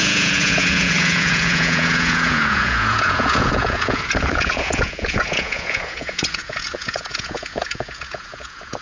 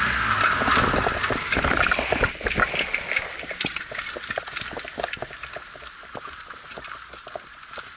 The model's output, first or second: first